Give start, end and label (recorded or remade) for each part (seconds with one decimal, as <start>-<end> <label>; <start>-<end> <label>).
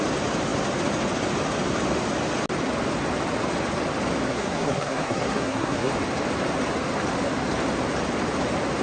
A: 0.0-4.3 recorded; 4.3-5.9 remade; 5.9-8.8 recorded